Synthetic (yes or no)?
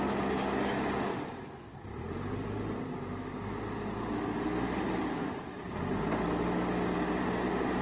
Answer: no